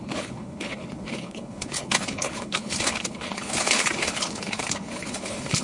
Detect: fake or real fake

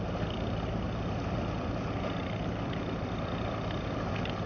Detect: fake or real real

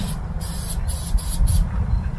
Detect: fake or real fake